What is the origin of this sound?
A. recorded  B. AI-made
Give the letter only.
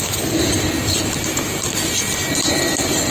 B